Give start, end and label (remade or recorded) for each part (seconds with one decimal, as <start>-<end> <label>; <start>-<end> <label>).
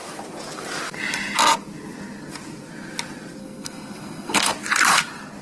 0.0-3.4 recorded; 3.4-4.5 remade; 4.5-5.4 recorded